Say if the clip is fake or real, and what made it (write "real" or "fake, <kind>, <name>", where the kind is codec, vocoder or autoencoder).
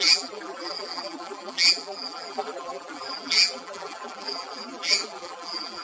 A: fake, vocoder, BigVGAN v2